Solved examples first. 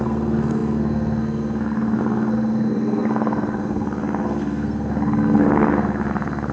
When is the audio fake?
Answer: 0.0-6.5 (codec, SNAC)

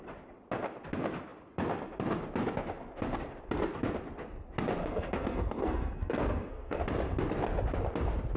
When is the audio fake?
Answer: 4.8-6.8 (codec, SNAC)